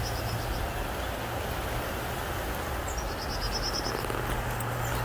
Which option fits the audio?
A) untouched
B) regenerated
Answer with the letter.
A